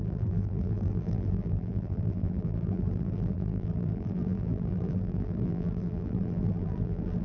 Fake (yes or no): yes